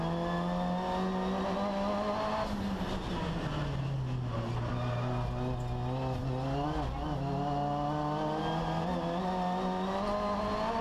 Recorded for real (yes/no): yes